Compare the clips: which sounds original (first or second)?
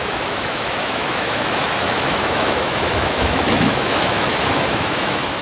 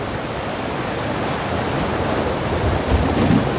second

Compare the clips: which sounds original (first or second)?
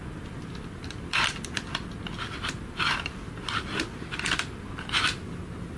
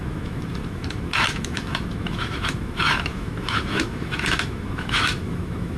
first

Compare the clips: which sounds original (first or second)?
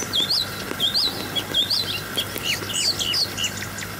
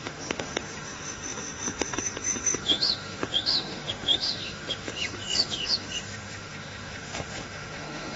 first